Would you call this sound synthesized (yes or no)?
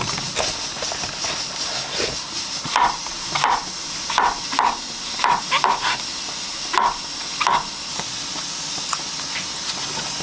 no